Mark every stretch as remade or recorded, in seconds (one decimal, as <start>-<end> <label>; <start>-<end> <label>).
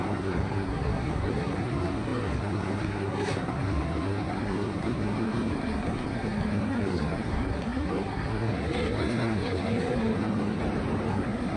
0.0-10.6 remade; 10.6-11.1 recorded; 11.1-11.6 remade